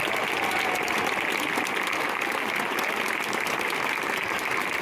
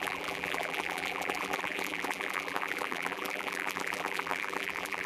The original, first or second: first